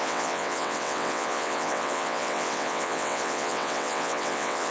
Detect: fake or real fake